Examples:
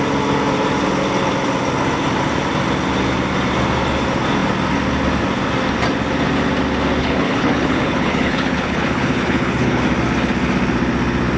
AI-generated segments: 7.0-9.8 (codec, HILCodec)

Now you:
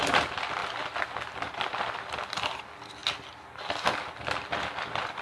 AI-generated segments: 0.0-0.6 (vocoder, BigVGAN v2); 1.4-3.0; 4.6-5.2

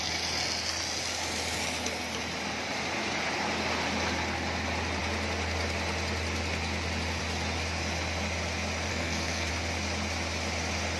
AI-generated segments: 8.9-9.5 (codec, SNAC)

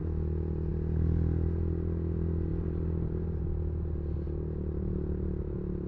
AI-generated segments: 2.5-3.4 (vocoder, BigVGAN v2)